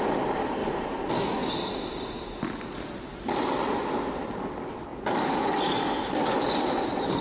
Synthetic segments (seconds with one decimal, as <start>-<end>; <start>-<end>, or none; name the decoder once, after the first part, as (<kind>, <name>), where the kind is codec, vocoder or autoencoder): 0.6-1.1 (vocoder, BigVGAN v2)